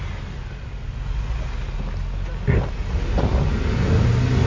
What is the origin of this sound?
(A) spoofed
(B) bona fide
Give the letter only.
B